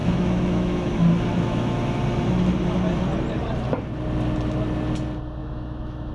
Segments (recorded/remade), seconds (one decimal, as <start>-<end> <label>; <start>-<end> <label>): 0.0-0.9 remade; 0.9-1.3 recorded; 1.3-2.0 remade; 2.0-5.4 recorded; 5.4-6.1 remade